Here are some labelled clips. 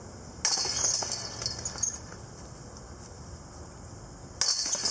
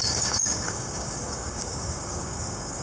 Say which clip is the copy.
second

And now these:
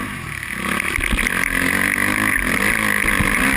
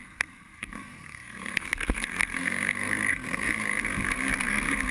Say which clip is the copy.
second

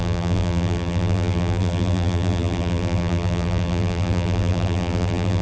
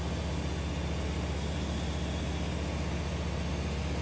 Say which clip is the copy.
first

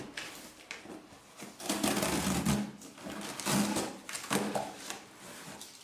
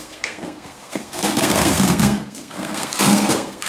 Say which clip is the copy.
second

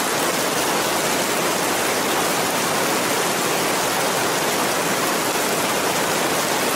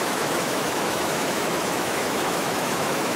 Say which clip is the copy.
second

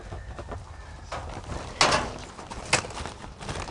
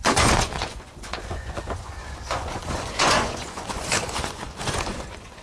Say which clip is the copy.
second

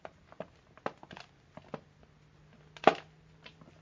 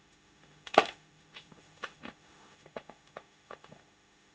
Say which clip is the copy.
second